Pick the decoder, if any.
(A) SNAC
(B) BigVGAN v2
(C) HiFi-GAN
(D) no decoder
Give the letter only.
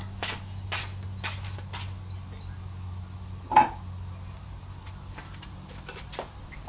D